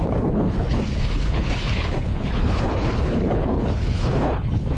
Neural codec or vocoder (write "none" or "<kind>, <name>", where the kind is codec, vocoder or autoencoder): codec, HILCodec